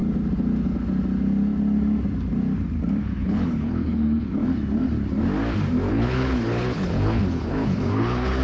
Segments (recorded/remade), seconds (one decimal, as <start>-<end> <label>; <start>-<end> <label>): 0.0-3.0 recorded; 3.0-4.4 remade; 4.4-5.9 recorded; 5.9-8.4 remade